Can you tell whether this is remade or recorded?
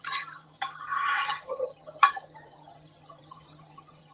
remade